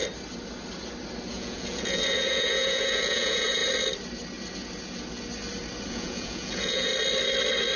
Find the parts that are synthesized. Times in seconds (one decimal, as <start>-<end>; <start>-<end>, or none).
1.3-3.6; 5.9-6.9

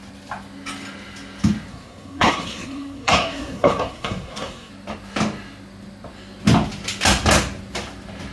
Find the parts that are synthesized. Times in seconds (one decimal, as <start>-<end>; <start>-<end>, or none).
1.7-4.7